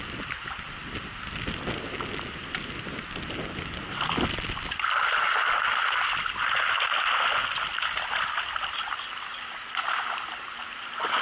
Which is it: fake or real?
real